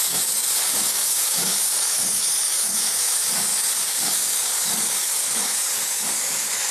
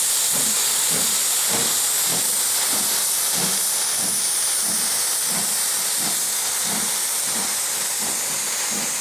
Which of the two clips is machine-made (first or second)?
first